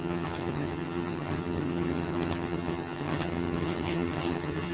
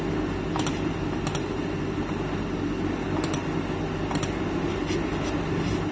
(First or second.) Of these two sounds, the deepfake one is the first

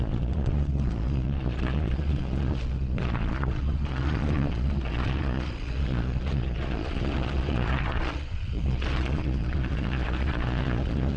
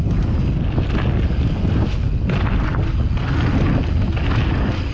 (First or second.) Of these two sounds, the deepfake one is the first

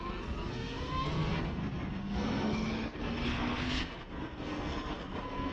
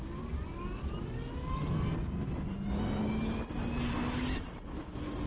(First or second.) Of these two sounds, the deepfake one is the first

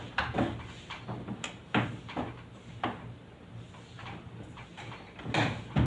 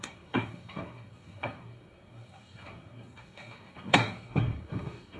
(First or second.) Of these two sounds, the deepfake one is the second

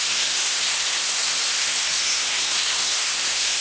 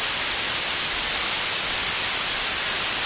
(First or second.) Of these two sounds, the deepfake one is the first